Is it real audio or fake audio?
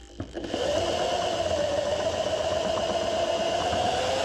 real